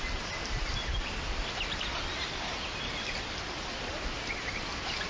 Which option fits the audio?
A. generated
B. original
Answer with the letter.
B